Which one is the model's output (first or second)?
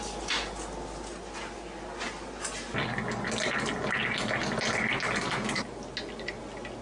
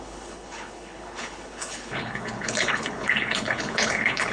second